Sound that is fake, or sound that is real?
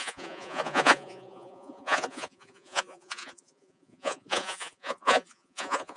fake